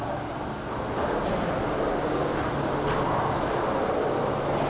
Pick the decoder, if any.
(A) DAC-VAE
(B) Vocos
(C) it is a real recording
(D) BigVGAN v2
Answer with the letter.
C